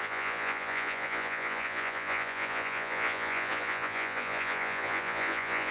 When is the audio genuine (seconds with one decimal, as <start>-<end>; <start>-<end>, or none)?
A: none